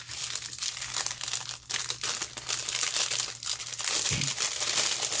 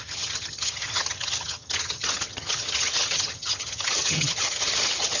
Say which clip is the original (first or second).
first